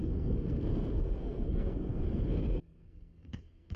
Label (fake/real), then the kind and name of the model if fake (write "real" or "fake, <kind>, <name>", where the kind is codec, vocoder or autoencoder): fake, codec, SNAC